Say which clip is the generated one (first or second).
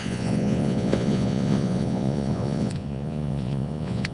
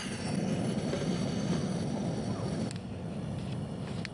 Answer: first